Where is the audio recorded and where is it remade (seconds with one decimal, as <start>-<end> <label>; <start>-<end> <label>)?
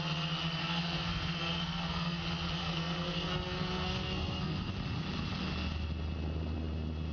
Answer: 0.0-0.6 recorded; 0.6-2.2 remade; 2.2-2.6 recorded; 2.6-4.7 remade; 4.7-7.1 recorded